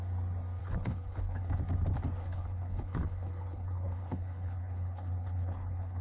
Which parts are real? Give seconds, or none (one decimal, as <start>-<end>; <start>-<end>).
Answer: 0.0-0.6; 1.6-2.2